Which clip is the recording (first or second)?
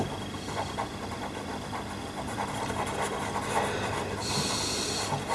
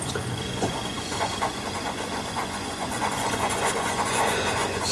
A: first